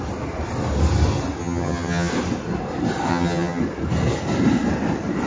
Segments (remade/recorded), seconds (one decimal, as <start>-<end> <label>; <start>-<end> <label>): 0.0-1.4 recorded; 1.4-2.1 remade; 2.1-3.1 recorded; 3.1-3.6 remade; 3.6-5.3 recorded